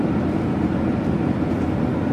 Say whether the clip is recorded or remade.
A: recorded